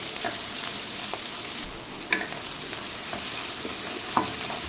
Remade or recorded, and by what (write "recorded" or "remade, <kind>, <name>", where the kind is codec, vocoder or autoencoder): recorded